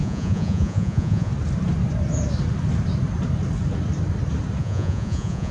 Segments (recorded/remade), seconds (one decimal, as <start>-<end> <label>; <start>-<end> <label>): 0.0-1.3 remade; 1.3-4.6 recorded; 4.6-5.5 remade